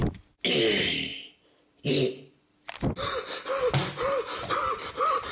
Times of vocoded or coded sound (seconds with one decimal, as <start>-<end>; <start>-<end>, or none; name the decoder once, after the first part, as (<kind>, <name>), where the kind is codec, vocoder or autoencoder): none